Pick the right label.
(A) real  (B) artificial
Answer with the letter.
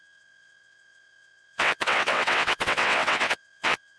B